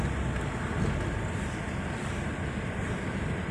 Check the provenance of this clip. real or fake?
real